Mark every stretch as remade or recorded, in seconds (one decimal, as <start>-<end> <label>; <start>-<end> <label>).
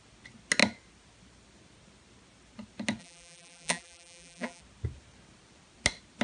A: 0.0-3.0 recorded; 3.0-4.6 remade; 4.6-6.2 recorded